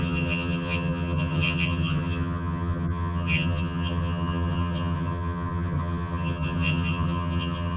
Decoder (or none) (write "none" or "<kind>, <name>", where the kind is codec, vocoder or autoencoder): vocoder, HiFi-GAN